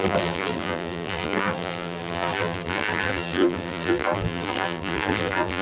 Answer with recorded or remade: remade